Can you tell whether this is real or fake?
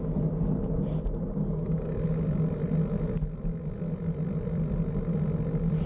real